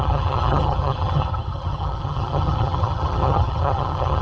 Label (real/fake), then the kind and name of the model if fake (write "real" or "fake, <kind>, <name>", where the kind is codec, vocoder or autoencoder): fake, vocoder, HiFi-GAN